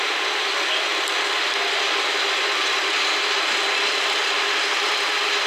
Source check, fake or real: real